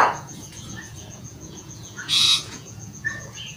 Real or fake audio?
fake